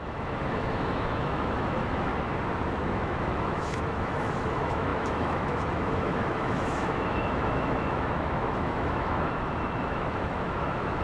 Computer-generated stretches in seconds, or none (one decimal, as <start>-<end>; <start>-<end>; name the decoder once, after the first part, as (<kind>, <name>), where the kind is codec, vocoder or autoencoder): 0.0-2.1 (autoencoder, DAC-VAE); 2.7-11.0

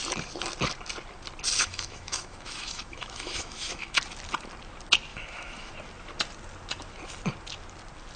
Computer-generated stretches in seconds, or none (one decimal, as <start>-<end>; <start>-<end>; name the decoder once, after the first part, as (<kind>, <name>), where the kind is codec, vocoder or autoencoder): 1.6-4.0 (autoencoder, DAC-VAE); 5.1-5.7